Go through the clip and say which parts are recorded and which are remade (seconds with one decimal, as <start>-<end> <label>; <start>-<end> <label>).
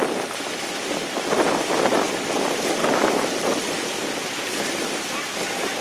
0.0-5.8 recorded